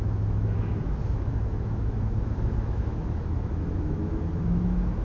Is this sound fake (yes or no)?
yes